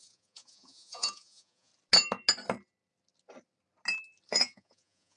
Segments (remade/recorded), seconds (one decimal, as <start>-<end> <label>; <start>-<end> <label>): 0.0-1.7 remade; 1.7-4.3 recorded; 4.3-5.2 remade